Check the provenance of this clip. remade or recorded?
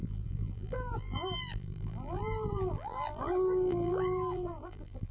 remade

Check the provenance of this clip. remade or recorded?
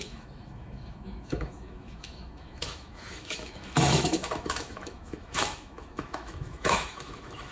remade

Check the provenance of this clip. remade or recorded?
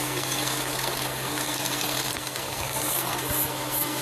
remade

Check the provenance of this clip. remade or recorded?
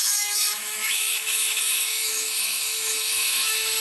remade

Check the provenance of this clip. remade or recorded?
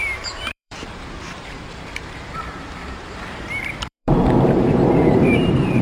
remade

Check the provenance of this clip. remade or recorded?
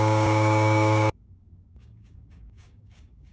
remade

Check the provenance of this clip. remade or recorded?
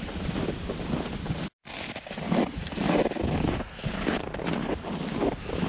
recorded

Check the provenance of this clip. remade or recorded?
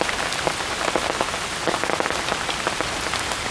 recorded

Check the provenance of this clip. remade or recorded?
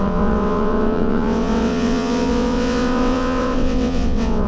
remade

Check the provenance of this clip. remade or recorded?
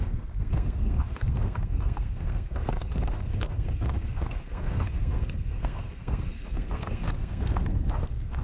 remade